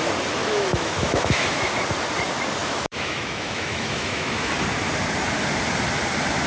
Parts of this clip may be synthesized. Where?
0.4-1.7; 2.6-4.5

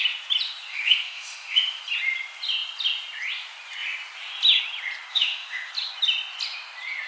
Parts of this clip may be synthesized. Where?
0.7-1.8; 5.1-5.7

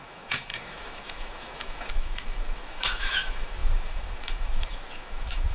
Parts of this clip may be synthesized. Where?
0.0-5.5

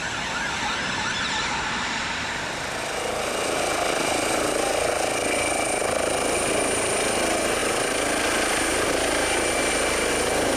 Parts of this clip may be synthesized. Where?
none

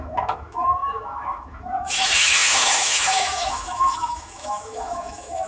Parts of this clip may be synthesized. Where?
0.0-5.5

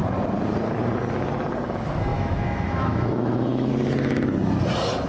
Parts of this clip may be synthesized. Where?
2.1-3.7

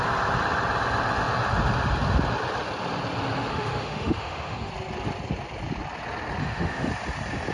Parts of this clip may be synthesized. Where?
3.5-4.7; 6.4-6.9